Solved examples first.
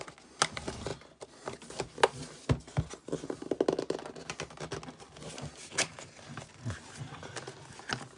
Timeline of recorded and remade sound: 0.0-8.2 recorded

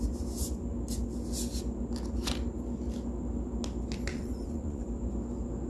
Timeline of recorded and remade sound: 0.0-4.1 recorded; 4.1-4.8 remade; 4.8-5.7 recorded